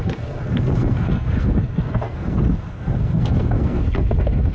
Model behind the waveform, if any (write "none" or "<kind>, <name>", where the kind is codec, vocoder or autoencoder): codec, SNAC